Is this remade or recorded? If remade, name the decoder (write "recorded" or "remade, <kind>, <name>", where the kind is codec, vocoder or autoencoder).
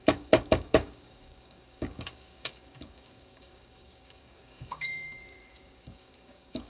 remade, codec, DAC